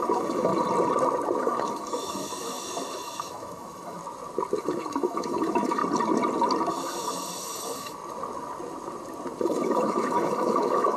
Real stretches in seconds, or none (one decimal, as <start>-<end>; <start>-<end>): 0.5-1.4; 4.0-4.6; 5.8-6.7; 8.0-9.4